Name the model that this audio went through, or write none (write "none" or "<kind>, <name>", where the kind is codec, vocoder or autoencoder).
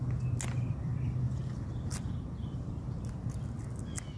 none